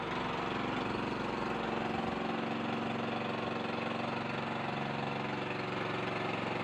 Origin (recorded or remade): recorded